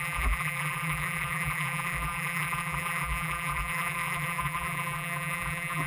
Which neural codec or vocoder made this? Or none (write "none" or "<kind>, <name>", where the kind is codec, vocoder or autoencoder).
vocoder, BigVGAN v2